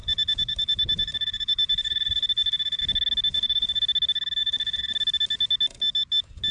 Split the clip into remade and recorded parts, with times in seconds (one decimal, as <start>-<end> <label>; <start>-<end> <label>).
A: 0.0-2.8 remade; 2.8-3.3 recorded; 3.3-3.8 remade; 3.8-4.4 recorded; 4.4-4.9 remade; 4.9-6.5 recorded